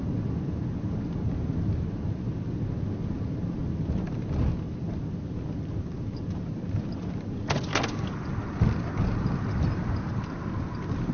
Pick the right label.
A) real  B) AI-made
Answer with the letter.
A